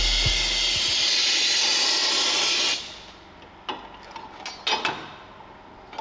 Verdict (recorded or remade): recorded